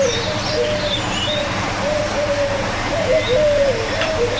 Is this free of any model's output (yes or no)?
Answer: no